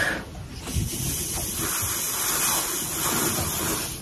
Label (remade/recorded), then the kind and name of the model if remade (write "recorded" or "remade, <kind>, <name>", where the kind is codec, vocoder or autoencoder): recorded